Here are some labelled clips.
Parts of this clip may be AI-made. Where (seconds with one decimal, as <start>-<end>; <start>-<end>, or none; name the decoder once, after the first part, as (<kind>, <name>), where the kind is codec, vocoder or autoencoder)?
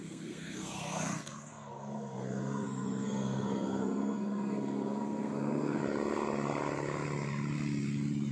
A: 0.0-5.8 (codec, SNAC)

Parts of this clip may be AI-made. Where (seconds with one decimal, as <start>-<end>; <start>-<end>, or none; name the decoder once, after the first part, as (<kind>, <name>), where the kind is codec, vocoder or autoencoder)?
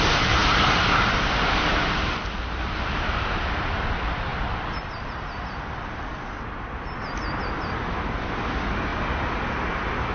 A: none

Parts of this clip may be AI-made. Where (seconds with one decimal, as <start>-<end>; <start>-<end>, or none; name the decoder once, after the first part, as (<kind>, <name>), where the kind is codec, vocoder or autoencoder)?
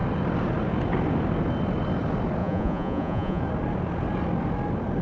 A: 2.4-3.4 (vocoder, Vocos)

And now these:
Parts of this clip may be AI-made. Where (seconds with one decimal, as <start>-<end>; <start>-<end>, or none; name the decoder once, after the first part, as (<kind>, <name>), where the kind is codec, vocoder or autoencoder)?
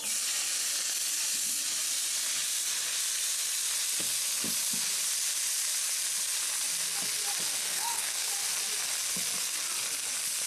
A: 7.6-8.3 (codec, SNAC)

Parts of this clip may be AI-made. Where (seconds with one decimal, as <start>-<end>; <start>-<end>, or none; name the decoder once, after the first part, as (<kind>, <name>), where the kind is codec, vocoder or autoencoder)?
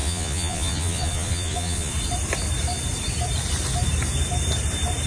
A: 0.0-1.9 (vocoder, Vocos)